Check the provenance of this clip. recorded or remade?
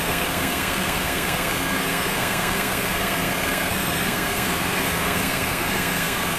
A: remade